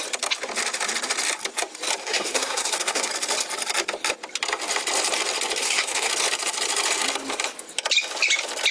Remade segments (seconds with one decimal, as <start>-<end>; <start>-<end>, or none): 2.0-3.1; 5.6-6.1